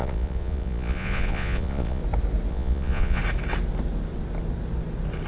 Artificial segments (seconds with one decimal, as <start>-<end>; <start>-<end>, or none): 0.0-2.0; 2.5-3.2